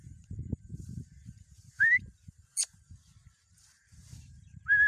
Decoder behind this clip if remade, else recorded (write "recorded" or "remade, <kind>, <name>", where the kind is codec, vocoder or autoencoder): remade, vocoder, BigVGAN v2